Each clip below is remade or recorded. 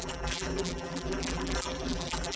remade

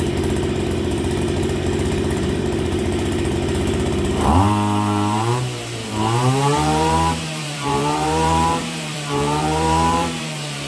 remade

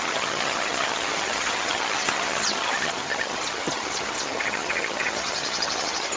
remade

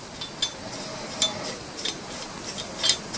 recorded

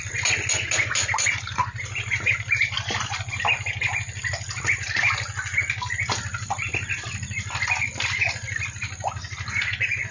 recorded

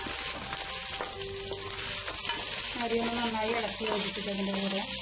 recorded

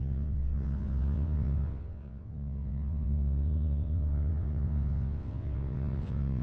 remade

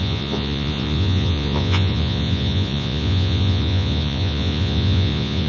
remade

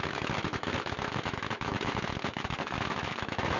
remade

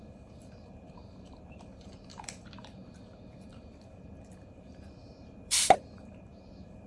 remade